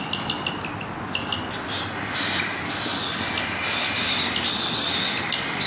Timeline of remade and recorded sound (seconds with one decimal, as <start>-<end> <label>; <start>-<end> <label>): 0.0-5.7 recorded